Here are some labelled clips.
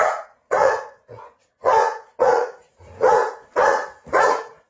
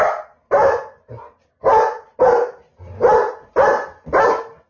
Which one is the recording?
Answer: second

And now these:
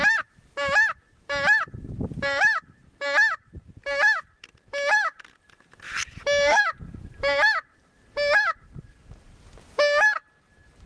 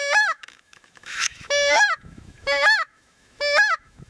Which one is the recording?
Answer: first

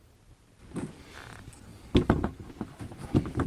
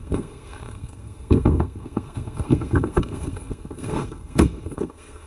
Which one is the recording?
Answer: first